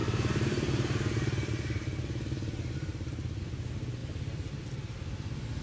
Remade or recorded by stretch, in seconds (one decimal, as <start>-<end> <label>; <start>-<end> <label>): 0.0-3.4 remade; 3.4-4.0 recorded; 4.0-4.5 remade; 4.5-5.6 recorded